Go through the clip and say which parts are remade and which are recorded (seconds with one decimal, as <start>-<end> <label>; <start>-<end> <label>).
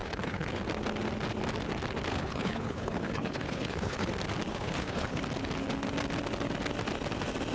0.0-0.6 remade; 0.6-2.1 recorded; 2.1-4.1 remade; 4.1-4.5 recorded; 4.5-5.2 remade; 5.2-7.5 recorded